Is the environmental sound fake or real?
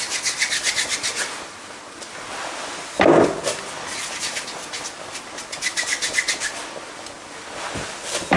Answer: real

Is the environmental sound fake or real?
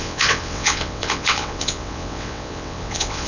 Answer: fake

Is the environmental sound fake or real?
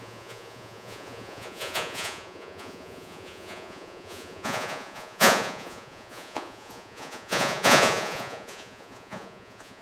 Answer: fake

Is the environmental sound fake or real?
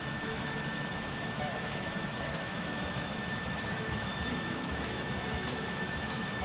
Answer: fake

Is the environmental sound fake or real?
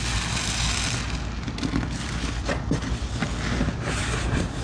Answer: real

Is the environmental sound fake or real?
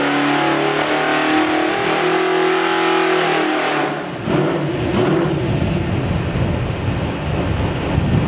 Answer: real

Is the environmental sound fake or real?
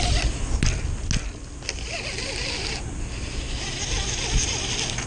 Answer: real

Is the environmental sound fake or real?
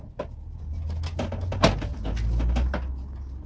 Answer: real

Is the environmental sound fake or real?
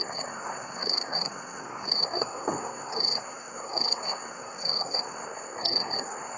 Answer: fake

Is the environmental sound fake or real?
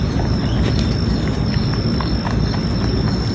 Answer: real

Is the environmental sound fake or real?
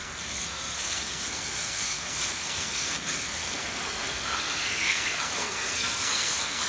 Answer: fake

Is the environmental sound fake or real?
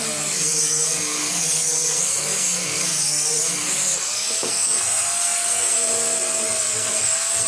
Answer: fake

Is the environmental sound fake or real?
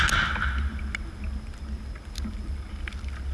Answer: real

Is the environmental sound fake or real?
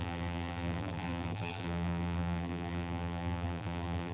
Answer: fake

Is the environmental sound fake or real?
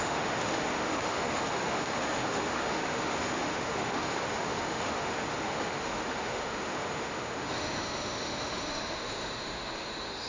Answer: fake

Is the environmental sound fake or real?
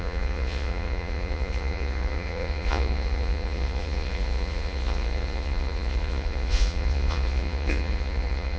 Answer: fake